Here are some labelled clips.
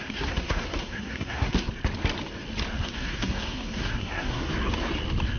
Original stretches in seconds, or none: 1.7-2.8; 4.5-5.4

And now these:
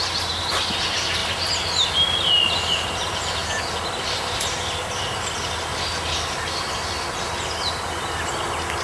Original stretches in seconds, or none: 0.0-8.8

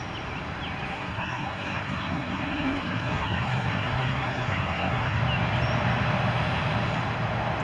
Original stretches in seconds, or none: 0.0-0.9; 5.2-7.6

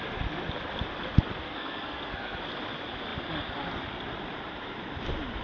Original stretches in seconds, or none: 0.0-1.4; 2.4-5.4

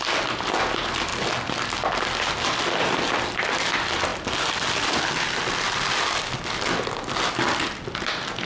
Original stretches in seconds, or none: 0.0-8.5

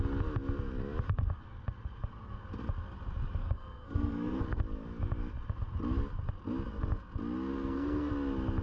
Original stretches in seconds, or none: 0.0-3.4; 4.6-7.5; 8.1-8.6

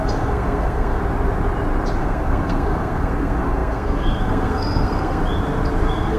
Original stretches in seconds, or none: 1.0-2.0; 5.2-5.8